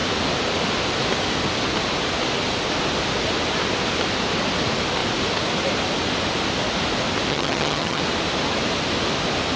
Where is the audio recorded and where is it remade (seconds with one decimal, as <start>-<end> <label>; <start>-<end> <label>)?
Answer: 0.0-7.3 recorded; 7.3-8.0 remade; 8.0-9.6 recorded